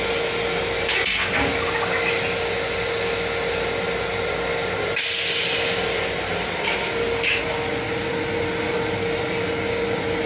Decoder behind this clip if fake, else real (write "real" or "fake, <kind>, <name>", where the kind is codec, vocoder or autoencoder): real